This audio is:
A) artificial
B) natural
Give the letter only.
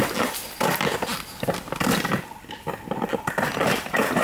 B